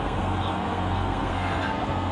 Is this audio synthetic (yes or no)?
yes